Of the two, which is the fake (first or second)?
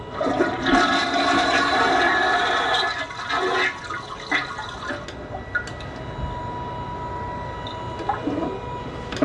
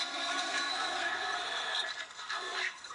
second